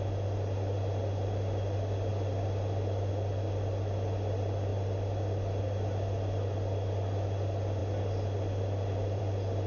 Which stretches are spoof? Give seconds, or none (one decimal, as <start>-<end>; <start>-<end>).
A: none